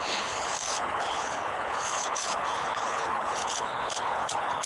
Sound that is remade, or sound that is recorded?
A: remade